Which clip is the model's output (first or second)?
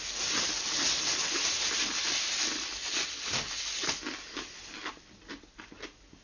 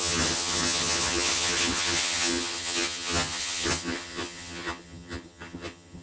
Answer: second